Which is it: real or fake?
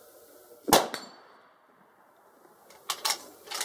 real